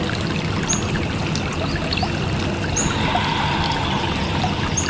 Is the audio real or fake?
real